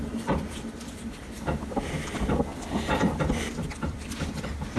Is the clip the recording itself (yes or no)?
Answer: no